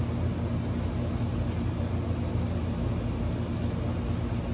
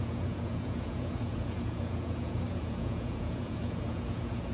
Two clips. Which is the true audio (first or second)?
first